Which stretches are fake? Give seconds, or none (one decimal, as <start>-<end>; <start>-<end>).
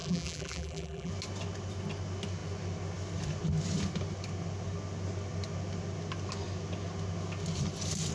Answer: 0.0-1.1